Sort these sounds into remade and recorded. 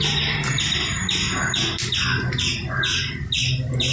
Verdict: recorded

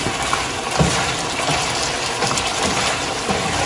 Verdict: recorded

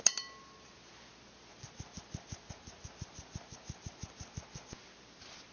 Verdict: recorded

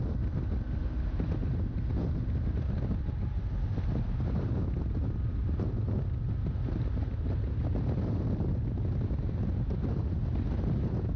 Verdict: recorded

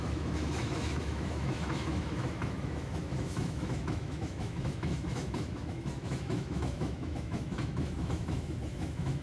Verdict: remade